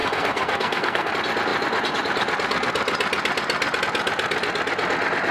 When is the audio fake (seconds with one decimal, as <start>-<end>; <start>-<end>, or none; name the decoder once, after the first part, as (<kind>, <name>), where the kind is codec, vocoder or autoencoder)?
0.0-1.1 (codec, SNAC)